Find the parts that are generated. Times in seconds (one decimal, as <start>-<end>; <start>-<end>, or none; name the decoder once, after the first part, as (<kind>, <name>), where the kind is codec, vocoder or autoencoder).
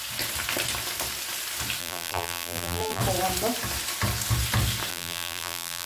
1.8-3.0 (vocoder, BigVGAN v2); 4.9-5.9